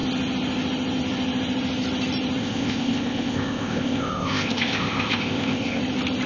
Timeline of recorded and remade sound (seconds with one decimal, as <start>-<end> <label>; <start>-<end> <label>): 0.0-2.4 recorded; 2.4-5.8 remade; 5.8-6.3 recorded